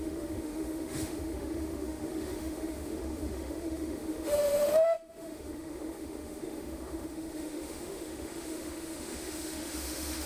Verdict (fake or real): fake